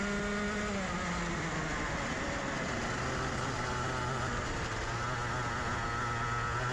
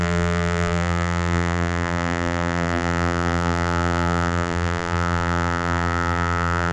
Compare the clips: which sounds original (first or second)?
first